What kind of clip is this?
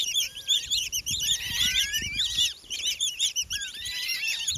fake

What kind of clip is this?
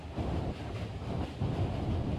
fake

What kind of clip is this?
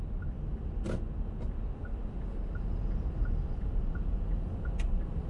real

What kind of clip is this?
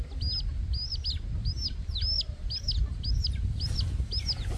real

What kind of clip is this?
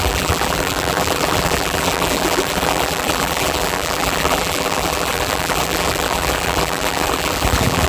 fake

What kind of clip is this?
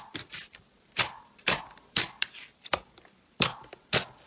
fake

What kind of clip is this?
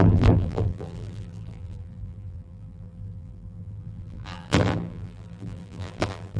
fake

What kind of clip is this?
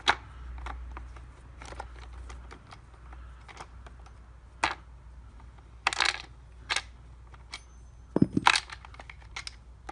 real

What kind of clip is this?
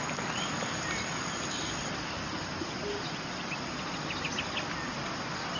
fake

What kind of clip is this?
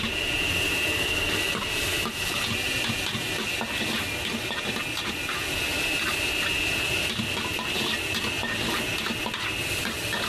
real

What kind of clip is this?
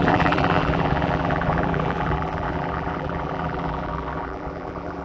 fake